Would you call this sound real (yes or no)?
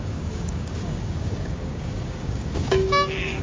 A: no